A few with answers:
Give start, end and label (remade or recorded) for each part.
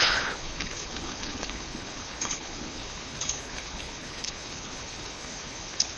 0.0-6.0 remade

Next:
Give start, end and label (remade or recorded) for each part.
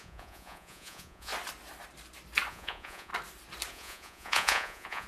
0.0-1.3 remade; 1.3-2.5 recorded; 2.5-3.1 remade; 3.1-3.7 recorded; 3.7-5.1 remade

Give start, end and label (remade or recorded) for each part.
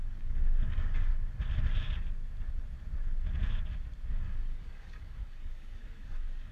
0.0-1.1 remade; 1.1-4.1 recorded; 4.1-6.5 remade